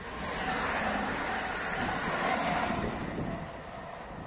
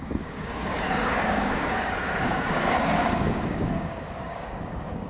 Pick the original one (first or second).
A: first